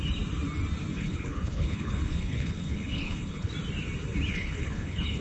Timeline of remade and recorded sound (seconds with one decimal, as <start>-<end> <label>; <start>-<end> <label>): 0.0-0.9 recorded; 0.9-3.5 remade; 3.5-4.3 recorded; 4.3-5.2 remade